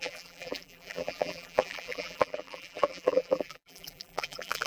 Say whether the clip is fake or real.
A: fake